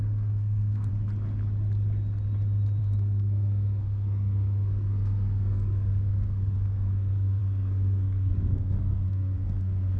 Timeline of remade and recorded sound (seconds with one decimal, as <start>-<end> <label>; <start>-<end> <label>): 0.0-0.9 remade; 0.9-2.8 recorded; 2.8-10.0 remade